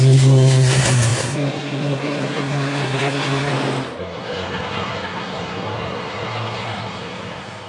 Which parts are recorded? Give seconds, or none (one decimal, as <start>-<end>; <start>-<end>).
3.5-4.0